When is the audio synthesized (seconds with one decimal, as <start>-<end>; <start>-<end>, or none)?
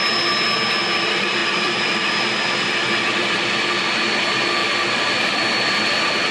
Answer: 1.4-2.1; 4.6-6.3